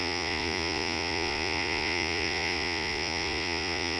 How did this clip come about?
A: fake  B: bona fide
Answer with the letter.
A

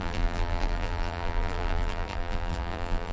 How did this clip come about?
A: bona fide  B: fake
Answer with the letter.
B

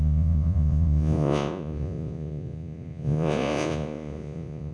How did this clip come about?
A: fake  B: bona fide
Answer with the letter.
A